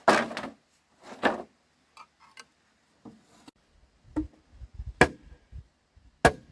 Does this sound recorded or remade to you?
recorded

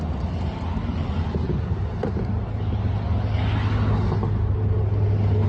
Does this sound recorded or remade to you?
recorded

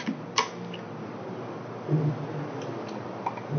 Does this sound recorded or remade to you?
recorded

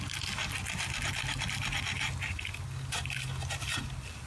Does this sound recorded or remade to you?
recorded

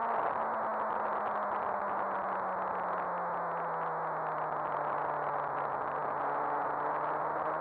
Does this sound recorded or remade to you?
recorded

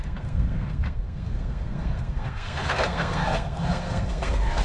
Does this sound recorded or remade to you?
remade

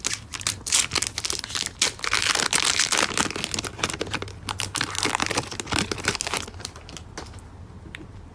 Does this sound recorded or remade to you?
recorded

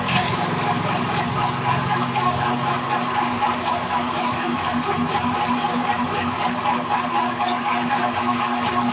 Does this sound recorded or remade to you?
remade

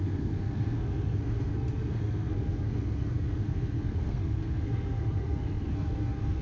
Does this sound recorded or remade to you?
remade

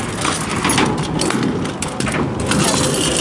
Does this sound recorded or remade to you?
recorded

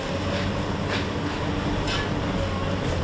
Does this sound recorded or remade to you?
recorded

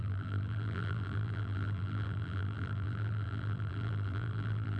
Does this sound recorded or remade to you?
remade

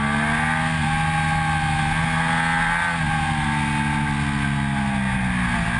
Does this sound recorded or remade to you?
recorded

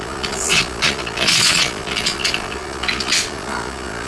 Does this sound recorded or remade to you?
remade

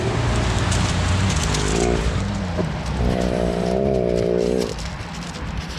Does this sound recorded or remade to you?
recorded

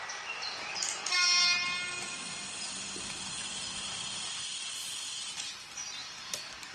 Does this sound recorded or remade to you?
recorded